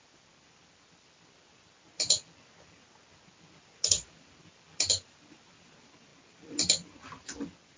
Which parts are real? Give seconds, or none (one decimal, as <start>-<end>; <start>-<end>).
0.0-7.8